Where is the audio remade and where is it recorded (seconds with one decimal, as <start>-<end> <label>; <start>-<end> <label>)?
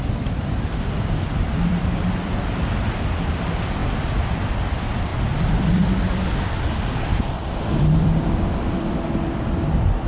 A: 0.0-1.7 recorded; 1.7-2.3 remade; 2.3-3.8 recorded; 3.8-4.3 remade; 4.3-5.1 recorded; 5.1-9.1 remade; 9.1-10.1 recorded